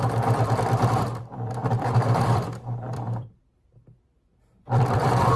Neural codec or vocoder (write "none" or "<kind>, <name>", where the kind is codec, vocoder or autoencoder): vocoder, BigVGAN v2